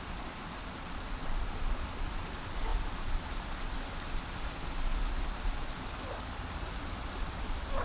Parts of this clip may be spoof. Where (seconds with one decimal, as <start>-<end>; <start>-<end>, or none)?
none